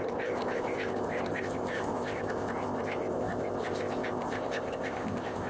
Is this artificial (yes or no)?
yes